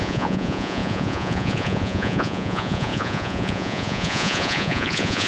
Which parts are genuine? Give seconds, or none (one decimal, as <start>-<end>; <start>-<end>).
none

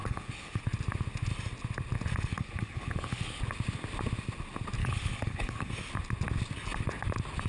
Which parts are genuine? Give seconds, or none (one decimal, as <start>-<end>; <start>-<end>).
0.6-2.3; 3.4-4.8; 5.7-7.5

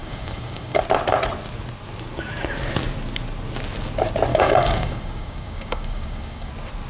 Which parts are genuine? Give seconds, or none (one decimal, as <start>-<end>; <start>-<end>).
0.8-4.3; 6.5-6.9